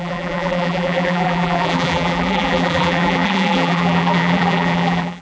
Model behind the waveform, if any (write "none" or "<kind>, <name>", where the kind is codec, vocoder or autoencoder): vocoder, BigVGAN v2